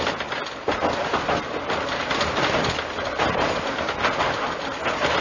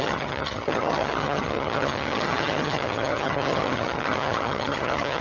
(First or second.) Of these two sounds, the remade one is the second